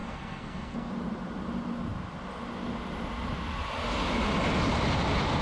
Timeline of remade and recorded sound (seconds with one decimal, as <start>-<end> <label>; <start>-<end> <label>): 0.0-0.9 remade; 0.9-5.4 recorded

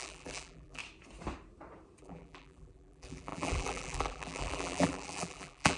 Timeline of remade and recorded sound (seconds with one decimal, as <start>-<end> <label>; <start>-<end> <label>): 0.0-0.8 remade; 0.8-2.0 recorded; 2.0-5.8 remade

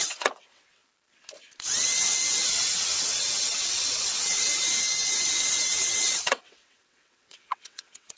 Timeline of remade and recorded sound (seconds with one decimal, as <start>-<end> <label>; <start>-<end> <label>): 0.0-0.8 remade; 0.8-2.5 recorded; 2.5-4.5 remade; 4.5-5.0 recorded; 5.0-8.2 remade

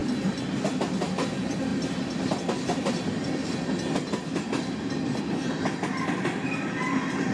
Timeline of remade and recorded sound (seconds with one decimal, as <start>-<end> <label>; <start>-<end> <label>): 0.0-7.3 recorded

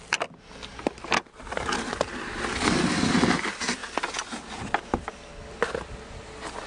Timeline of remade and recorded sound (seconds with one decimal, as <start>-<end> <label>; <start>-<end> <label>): 0.0-0.7 recorded; 0.7-1.7 remade; 1.7-6.7 recorded

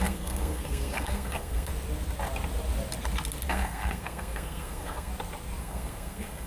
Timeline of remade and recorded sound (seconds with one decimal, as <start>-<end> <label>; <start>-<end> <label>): 0.0-1.7 remade; 1.7-3.5 recorded; 3.5-5.1 remade; 5.1-5.6 recorded; 5.6-6.5 remade

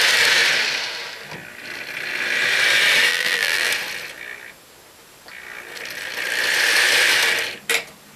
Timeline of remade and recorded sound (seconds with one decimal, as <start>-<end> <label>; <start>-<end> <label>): 0.0-3.1 recorded; 3.1-3.7 remade; 3.7-8.2 recorded

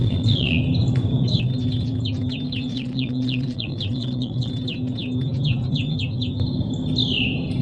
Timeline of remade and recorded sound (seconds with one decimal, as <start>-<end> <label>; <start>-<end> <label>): 0.0-0.6 remade; 0.6-2.7 recorded; 2.7-4.5 remade; 4.5-7.6 recorded